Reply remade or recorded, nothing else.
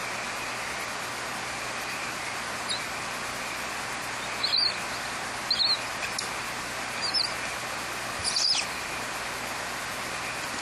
recorded